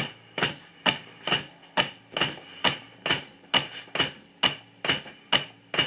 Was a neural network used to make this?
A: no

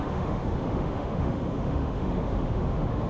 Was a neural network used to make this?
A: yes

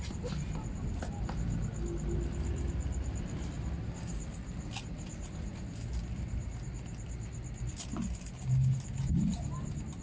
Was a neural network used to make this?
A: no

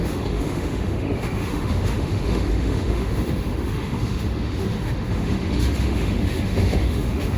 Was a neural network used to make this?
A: yes